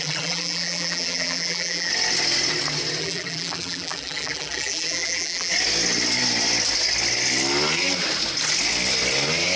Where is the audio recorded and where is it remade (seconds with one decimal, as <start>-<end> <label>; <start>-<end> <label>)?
0.0-1.9 remade; 1.9-3.0 recorded; 3.0-5.5 remade; 5.5-9.6 recorded